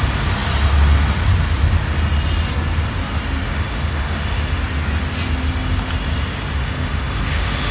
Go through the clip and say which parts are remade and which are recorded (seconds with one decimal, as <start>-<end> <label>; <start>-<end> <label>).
0.0-3.5 recorded; 3.5-4.6 remade; 4.6-6.6 recorded; 6.6-7.7 remade